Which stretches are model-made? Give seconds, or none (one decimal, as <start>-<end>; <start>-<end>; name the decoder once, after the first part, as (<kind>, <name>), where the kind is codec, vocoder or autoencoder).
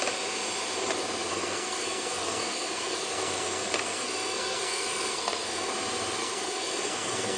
1.3-5.7 (codec, SNAC); 6.2-7.4